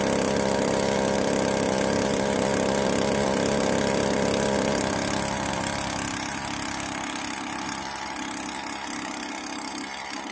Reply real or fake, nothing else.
real